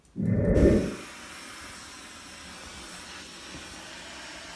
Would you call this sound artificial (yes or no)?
no